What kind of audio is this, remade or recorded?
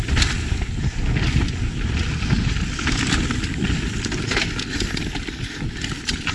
recorded